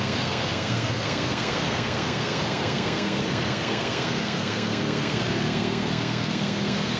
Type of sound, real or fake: fake